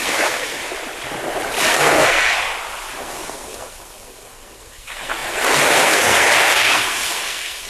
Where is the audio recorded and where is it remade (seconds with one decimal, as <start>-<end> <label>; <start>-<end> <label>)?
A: 0.0-0.6 remade; 0.6-1.6 recorded; 1.6-2.5 remade; 2.5-3.0 recorded; 3.0-7.7 remade